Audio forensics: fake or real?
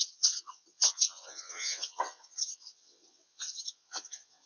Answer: fake